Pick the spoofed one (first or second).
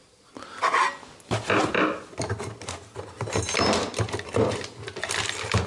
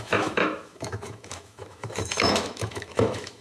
second